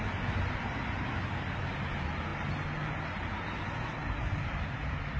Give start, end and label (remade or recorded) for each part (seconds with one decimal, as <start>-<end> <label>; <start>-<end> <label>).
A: 0.0-5.2 recorded